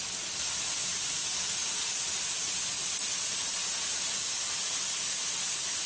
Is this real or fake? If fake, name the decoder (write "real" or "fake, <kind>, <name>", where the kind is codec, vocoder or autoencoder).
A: real